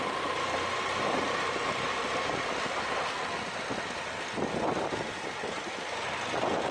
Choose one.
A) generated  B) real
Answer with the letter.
B